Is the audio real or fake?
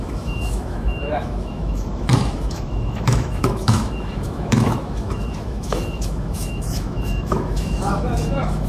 fake